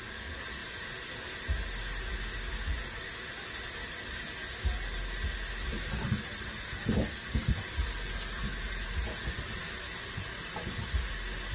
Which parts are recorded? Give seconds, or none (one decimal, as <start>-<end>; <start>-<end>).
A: 0.0-11.5

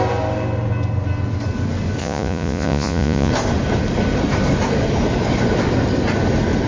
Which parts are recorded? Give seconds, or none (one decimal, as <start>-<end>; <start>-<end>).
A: 0.0-2.0; 3.3-6.7

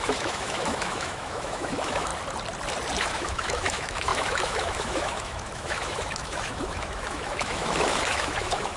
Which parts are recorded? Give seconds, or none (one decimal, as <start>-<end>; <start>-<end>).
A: 2.1-3.0

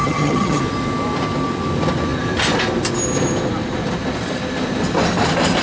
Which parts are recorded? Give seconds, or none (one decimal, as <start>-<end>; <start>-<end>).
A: 0.6-5.6

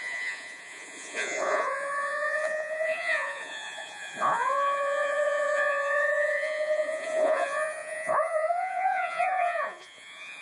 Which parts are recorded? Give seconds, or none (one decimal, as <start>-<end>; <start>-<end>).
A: none

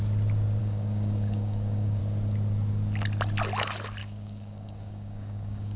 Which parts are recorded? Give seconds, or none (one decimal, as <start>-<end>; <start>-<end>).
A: 0.0-0.6; 2.0-4.0